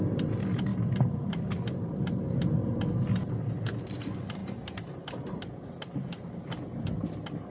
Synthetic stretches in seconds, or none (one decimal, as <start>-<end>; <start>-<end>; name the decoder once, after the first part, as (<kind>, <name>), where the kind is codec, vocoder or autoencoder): 4.4-6.1 (vocoder, BigVGAN v2)